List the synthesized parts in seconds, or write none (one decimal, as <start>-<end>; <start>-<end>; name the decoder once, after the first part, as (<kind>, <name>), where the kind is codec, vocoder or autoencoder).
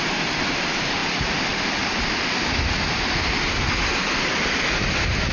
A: none